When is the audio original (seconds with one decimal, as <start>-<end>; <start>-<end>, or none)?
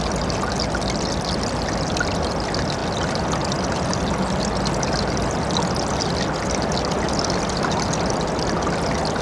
0.0-9.2